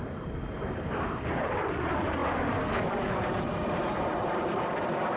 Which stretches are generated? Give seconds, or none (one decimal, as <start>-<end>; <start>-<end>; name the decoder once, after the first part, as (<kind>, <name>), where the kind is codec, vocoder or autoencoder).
0.0-2.2 (vocoder, BigVGAN v2); 2.9-5.2